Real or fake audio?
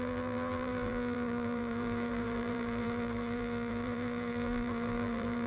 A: fake